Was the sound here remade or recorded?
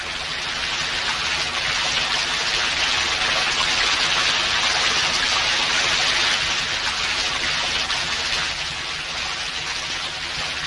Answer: recorded